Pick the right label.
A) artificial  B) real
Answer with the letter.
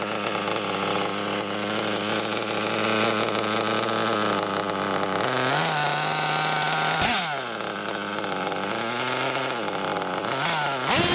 B